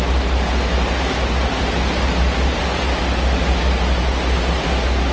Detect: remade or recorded recorded